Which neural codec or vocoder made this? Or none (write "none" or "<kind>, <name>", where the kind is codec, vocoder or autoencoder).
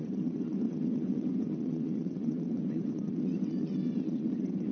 vocoder, WaveNeXt